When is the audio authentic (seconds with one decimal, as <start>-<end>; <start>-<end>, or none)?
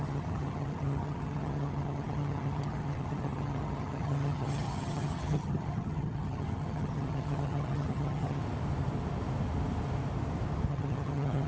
8.4-10.7